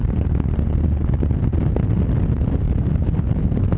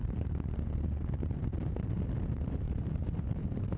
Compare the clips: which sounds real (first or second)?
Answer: first